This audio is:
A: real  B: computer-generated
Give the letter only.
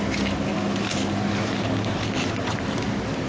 A